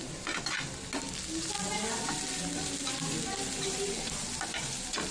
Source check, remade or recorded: recorded